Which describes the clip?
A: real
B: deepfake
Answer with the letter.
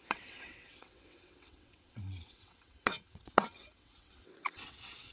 B